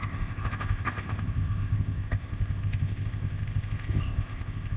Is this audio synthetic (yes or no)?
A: yes